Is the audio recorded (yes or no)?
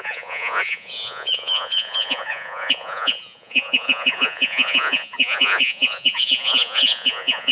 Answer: no